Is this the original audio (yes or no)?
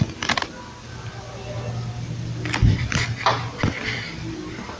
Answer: yes